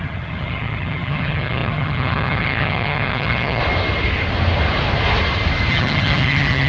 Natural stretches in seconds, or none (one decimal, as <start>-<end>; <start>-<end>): 3.6-5.7